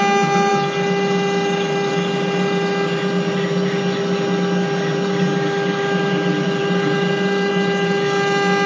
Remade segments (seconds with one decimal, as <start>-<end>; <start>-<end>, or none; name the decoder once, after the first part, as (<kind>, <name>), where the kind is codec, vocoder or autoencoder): none